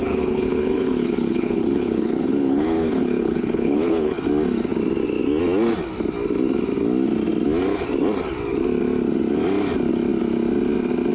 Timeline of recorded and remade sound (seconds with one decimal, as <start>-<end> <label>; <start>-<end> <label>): 0.0-4.2 remade; 4.2-11.1 recorded